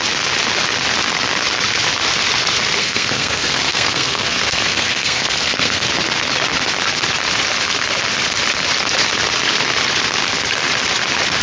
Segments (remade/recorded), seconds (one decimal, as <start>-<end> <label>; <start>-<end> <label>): 0.0-2.8 recorded; 2.8-5.9 remade; 5.9-11.4 recorded